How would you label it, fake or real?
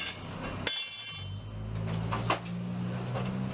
real